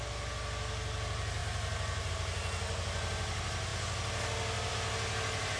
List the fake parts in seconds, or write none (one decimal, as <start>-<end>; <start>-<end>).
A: none